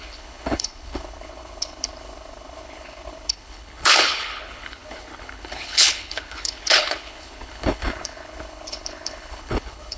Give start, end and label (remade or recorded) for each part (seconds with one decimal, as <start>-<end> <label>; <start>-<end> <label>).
0.0-10.0 remade